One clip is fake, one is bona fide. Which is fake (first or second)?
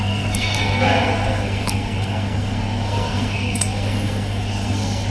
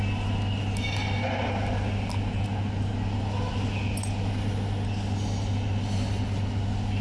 first